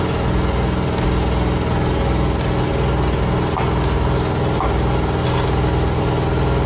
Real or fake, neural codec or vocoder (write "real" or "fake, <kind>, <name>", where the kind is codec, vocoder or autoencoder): real